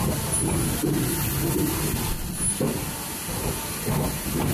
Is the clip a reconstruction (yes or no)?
no